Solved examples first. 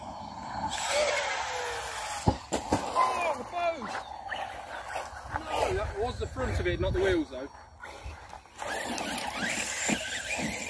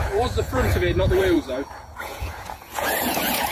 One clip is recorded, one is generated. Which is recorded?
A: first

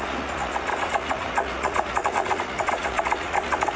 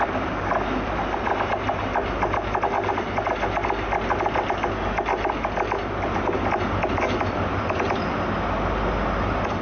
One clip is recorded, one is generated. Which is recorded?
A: second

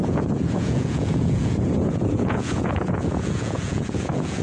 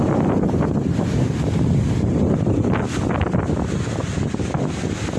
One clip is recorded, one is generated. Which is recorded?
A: second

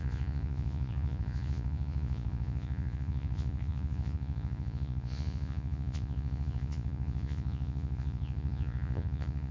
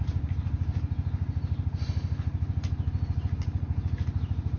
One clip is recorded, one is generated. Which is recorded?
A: second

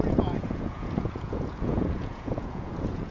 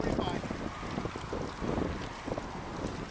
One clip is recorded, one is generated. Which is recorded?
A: second